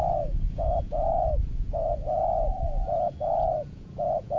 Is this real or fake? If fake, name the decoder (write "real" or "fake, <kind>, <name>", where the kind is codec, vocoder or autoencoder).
fake, vocoder, Vocos